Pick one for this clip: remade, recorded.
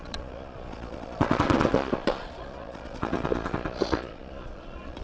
remade